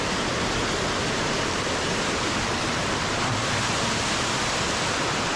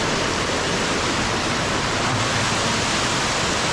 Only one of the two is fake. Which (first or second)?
first